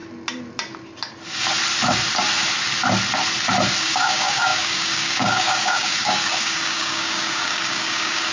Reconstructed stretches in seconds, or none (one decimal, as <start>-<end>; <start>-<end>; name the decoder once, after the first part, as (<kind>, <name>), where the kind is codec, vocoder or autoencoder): 3.8-8.3 (codec, DAC)